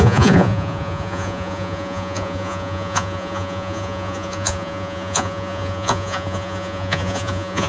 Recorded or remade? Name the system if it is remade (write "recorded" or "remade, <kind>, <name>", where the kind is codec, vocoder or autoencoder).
remade, vocoder, Vocos